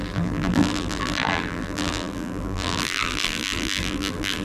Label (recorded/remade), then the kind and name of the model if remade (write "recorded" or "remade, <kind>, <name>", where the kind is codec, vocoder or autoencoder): remade, vocoder, BigVGAN v2